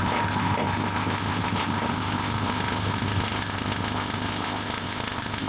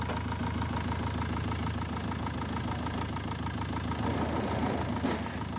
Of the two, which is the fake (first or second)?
first